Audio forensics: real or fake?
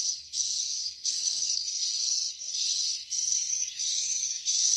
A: fake